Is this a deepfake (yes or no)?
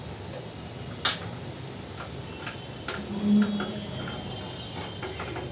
no